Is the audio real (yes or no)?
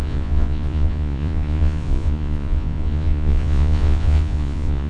no